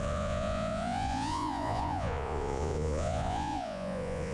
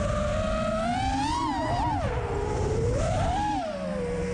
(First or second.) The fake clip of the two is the first